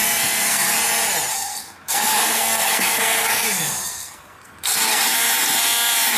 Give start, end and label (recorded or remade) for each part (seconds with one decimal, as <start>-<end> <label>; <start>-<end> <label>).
0.0-0.8 remade; 0.8-1.3 recorded; 1.3-5.0 remade; 5.0-6.2 recorded

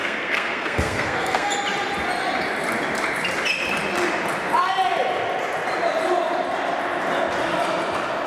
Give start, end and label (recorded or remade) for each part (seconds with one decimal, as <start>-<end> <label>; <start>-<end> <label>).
0.0-1.5 remade; 1.5-8.3 recorded

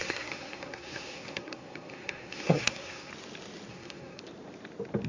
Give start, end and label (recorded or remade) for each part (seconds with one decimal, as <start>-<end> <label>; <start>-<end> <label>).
0.0-3.1 remade; 3.1-3.7 recorded; 3.7-4.2 remade; 4.2-5.1 recorded

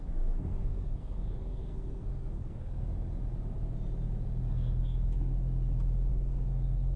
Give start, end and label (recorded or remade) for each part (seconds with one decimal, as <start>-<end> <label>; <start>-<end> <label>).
0.0-2.9 remade; 2.9-4.5 recorded; 4.5-5.3 remade; 5.3-6.1 recorded; 6.1-7.0 remade

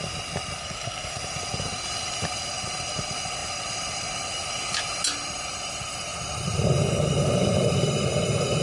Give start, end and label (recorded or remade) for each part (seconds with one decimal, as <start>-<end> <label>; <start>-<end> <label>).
0.0-0.6 recorded; 0.6-1.2 remade; 1.2-8.6 recorded

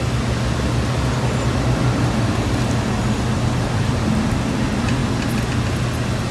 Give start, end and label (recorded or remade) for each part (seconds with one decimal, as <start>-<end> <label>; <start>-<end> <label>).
0.0-6.3 recorded